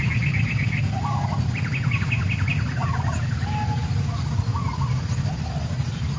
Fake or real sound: real